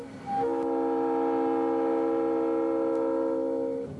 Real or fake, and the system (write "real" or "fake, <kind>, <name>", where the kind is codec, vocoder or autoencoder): real